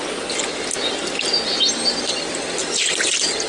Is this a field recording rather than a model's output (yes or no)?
yes